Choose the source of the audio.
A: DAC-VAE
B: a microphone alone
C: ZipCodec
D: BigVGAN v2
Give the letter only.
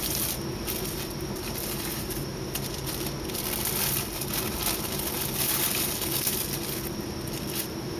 B